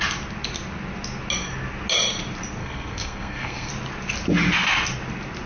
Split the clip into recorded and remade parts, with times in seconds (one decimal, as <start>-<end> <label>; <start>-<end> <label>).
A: 0.0-2.6 recorded; 2.6-3.7 remade; 3.7-5.5 recorded